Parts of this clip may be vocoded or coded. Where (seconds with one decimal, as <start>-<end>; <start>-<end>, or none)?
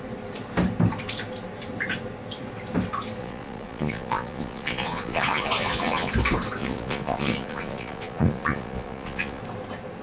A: 3.2-6.1; 6.6-9.4